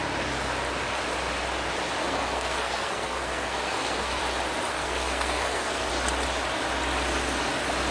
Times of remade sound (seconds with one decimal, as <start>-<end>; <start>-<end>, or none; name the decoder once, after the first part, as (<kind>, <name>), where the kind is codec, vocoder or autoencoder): 2.0-4.2 (codec, SNAC); 4.7-5.9

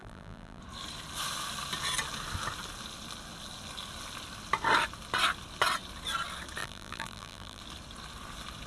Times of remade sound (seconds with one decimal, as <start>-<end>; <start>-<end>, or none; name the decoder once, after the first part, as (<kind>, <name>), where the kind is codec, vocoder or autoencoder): 0.0-0.6 (vocoder, BigVGAN v2); 6.6-7.6